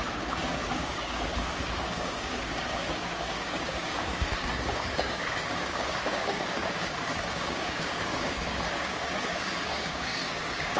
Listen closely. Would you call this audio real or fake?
fake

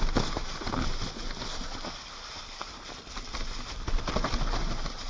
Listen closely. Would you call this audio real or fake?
real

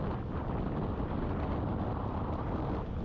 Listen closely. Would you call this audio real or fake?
real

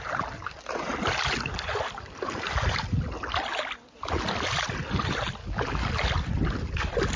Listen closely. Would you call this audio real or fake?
real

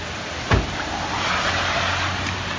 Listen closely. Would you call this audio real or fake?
real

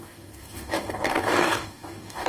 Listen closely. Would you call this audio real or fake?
fake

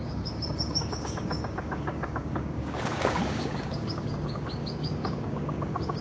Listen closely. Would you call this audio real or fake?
fake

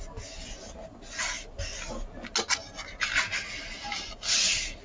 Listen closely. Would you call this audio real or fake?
real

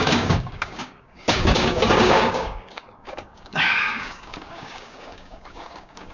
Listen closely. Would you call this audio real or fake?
fake